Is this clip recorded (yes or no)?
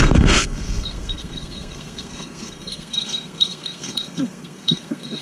no